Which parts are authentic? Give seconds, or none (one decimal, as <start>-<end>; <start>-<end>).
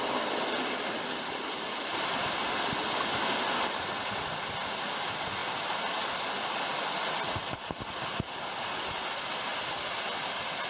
0.0-10.7